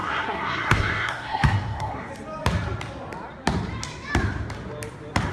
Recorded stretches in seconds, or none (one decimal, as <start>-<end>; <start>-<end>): 2.1-5.3

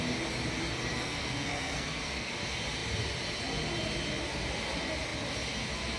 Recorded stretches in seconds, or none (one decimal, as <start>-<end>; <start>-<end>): 0.0-0.9; 2.3-6.0

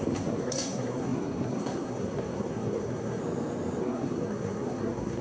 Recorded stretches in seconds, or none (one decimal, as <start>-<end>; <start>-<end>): 3.2-3.8

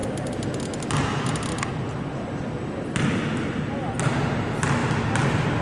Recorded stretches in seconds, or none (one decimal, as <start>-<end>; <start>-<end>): 0.0-5.6